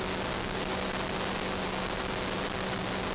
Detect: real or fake real